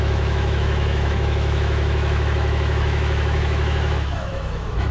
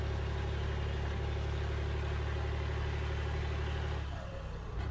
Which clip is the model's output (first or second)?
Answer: first